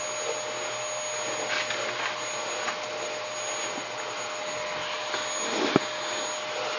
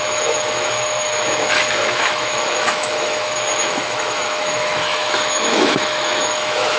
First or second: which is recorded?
first